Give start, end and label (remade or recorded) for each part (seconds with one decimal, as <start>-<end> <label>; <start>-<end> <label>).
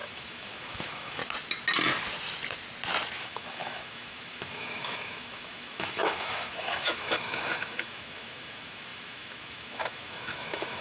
0.0-1.2 remade; 1.2-3.2 recorded; 3.2-10.8 remade